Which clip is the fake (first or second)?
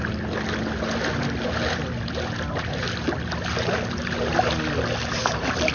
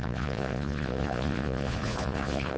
second